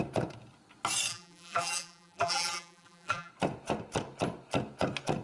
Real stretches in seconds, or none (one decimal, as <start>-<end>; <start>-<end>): 0.0-1.1; 3.3-5.2